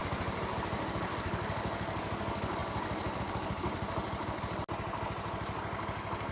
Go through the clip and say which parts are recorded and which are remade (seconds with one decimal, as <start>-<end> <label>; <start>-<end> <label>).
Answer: 0.0-1.0 recorded; 1.0-3.7 remade; 3.7-6.3 recorded